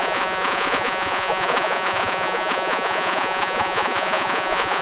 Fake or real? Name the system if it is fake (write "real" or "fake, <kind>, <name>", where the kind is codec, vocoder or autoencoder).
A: fake, vocoder, Vocos